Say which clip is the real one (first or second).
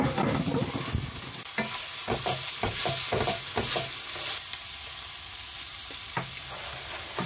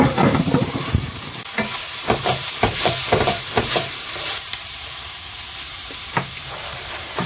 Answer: first